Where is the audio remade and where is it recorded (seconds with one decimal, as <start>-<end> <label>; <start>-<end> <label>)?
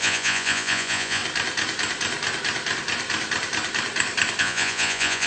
0.0-1.2 remade; 1.2-4.4 recorded; 4.4-5.3 remade